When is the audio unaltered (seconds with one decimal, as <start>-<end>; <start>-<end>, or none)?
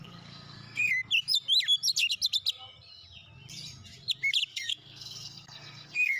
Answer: 0.9-4.5